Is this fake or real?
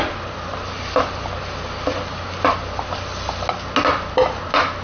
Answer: real